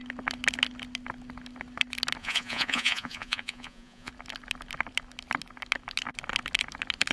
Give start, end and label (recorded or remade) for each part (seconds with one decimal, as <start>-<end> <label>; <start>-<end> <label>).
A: 0.0-2.2 recorded; 2.2-4.1 remade; 4.1-7.1 recorded